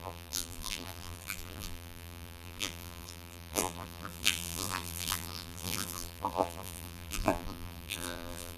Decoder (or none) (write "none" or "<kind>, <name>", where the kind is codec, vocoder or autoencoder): vocoder, BigVGAN v2